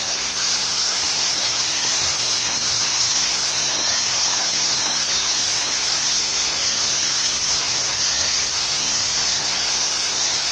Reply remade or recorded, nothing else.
remade